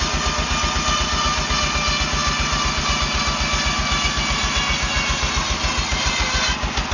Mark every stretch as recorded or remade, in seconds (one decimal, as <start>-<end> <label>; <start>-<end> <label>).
0.0-6.9 recorded